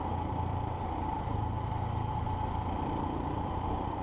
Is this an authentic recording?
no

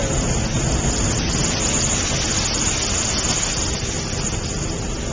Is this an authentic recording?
yes